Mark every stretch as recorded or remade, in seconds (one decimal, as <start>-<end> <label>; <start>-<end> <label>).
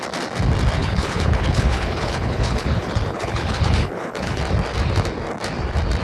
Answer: 0.0-0.8 recorded; 0.8-4.4 remade; 4.4-6.0 recorded